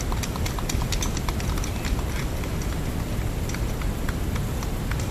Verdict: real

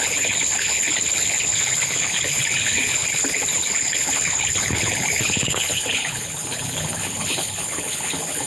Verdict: fake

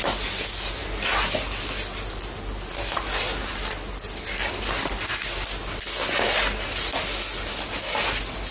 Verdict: real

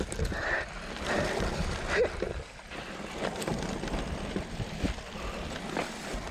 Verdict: real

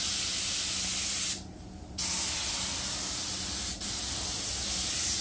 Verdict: real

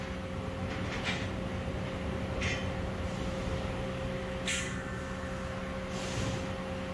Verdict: real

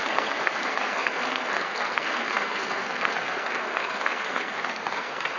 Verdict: fake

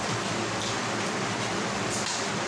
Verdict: real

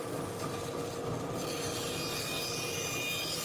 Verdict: real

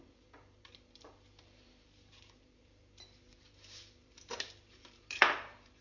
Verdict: fake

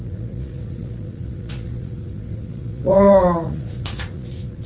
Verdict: fake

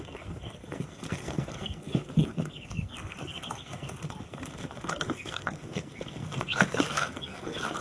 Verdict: fake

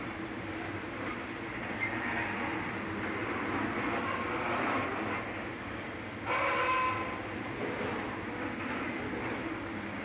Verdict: real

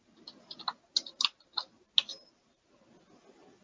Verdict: real